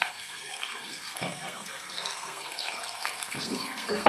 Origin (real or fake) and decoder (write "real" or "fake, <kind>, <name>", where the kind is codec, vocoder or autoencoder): fake, codec, SNAC